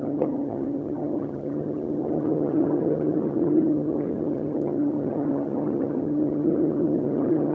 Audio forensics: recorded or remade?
remade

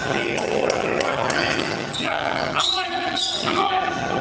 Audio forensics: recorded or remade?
remade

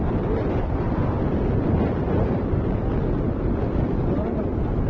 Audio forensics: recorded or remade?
recorded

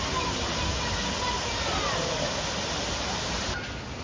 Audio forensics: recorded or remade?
recorded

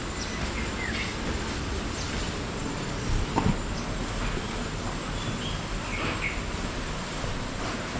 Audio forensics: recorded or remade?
recorded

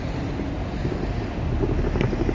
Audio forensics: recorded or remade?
recorded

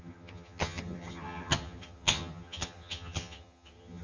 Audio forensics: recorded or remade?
remade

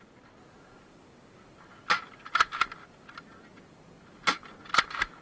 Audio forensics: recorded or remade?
recorded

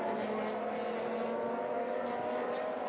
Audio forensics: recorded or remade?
recorded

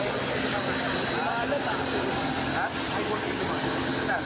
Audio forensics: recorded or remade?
recorded